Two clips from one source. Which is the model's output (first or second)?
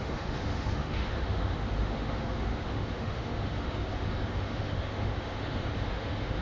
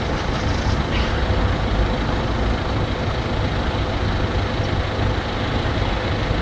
first